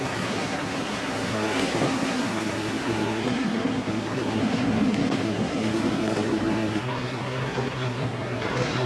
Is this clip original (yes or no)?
no